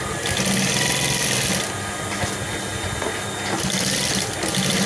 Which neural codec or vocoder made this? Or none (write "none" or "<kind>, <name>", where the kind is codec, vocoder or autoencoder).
none